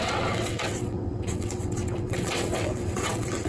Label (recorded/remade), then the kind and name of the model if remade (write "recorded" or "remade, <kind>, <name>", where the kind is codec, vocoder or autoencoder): remade, vocoder, WaveNeXt